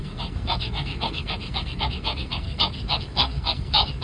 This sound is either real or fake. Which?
fake